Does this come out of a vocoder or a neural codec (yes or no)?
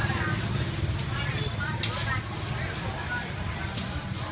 no